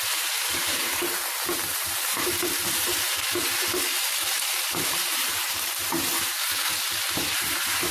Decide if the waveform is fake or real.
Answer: fake